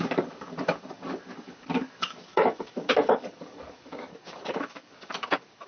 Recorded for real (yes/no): no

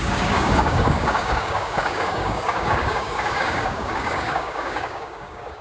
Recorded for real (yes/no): no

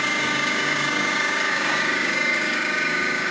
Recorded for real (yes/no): no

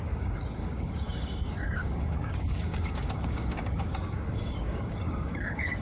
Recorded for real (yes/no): no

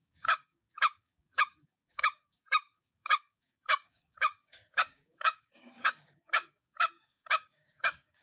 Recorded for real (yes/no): no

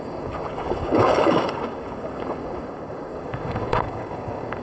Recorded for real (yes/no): no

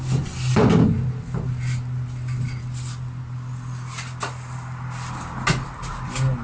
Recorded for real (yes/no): yes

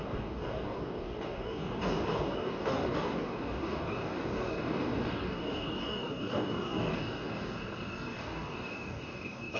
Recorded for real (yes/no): no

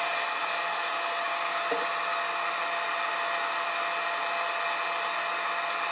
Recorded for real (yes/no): yes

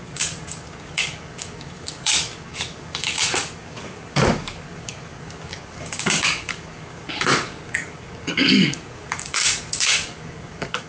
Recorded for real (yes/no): no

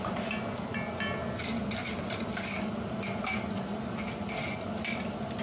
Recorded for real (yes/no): yes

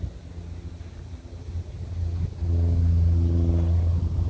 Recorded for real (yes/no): yes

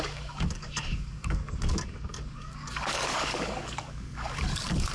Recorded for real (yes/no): no